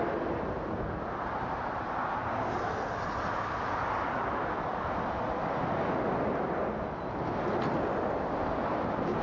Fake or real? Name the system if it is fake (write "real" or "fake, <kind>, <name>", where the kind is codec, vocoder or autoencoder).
real